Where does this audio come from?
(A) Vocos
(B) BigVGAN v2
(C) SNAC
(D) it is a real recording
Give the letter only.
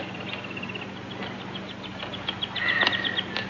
D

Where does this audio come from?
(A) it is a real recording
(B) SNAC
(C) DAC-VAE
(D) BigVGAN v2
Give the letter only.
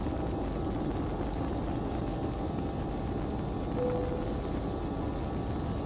A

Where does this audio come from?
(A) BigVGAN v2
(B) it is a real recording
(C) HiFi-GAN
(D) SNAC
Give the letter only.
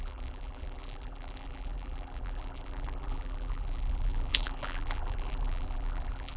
A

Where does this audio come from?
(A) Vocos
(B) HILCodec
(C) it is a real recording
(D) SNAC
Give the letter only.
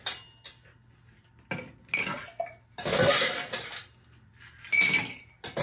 C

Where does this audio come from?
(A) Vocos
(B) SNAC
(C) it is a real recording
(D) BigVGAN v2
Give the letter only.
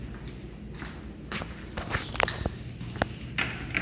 C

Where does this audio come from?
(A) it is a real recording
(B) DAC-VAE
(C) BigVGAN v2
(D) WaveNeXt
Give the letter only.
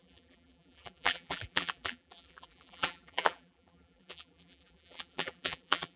C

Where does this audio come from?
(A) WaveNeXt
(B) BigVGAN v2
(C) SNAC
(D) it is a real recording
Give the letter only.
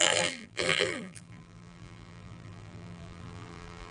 B